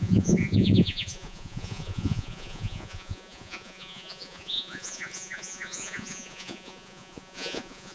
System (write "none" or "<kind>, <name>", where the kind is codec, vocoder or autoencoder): vocoder, Vocos